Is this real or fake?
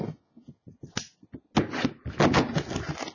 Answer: real